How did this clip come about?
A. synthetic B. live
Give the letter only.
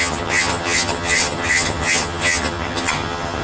A